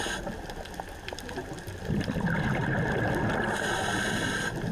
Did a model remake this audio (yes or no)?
no